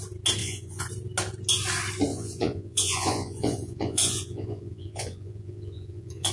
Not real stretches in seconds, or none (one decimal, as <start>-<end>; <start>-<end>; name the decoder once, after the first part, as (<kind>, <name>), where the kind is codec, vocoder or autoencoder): 0.4-0.9 (vocoder, Vocos); 2.1-6.3

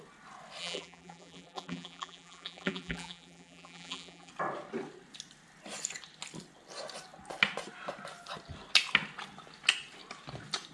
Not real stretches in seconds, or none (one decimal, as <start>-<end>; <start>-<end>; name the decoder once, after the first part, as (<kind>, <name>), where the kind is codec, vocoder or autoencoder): 0.6-4.3 (vocoder, BigVGAN v2)

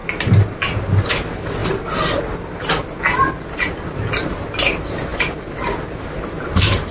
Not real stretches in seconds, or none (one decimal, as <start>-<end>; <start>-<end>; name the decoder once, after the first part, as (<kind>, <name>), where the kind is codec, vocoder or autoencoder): none

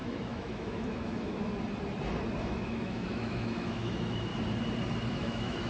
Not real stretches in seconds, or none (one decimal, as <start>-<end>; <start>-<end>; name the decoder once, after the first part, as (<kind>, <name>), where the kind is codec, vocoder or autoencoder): 0.0-1.5 (autoencoder, DAC-VAE); 2.4-4.3; 5.1-5.7

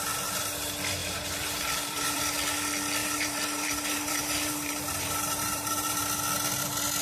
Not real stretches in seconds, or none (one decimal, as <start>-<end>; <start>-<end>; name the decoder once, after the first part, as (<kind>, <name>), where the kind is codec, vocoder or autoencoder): 1.0-2.2 (vocoder, BigVGAN v2); 3.0-6.0